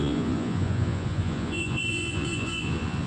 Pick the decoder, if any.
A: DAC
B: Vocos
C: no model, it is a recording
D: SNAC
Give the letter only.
B